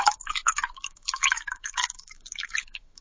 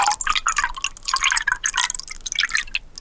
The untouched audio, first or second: second